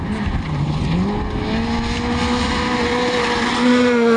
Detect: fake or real real